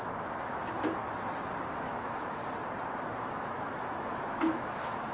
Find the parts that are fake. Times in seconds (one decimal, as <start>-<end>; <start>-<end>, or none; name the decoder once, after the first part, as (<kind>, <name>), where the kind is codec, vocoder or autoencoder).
0.0-1.0 (autoencoder, DAC-VAE); 1.7-2.4; 3.2-5.1